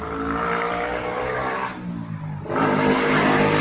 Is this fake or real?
real